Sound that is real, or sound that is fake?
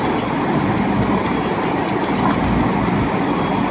real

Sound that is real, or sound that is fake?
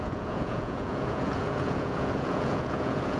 fake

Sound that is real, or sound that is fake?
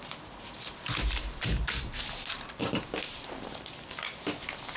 real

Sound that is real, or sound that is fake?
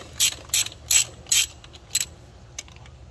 real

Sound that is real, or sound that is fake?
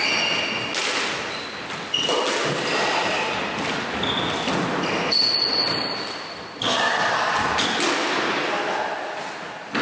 real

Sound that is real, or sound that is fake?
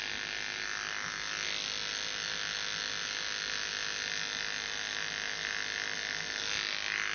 real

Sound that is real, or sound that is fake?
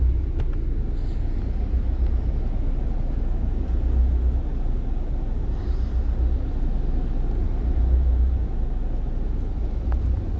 real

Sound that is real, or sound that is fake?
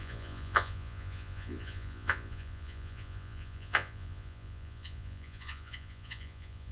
fake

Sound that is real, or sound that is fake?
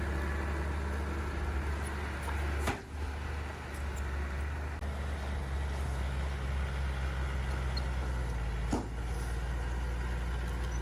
real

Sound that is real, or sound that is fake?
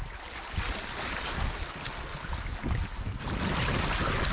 real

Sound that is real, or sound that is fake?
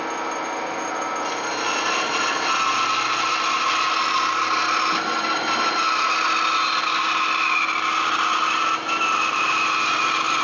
real